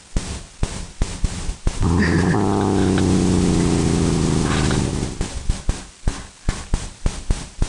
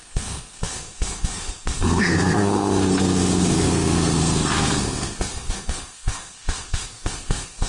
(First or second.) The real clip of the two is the first